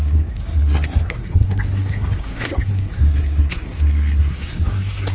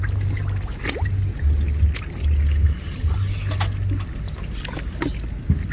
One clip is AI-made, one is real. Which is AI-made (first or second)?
first